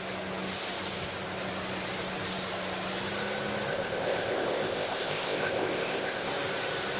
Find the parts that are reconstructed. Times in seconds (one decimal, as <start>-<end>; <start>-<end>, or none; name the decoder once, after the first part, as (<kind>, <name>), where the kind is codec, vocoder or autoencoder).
3.7-6.3 (codec, ZipCodec)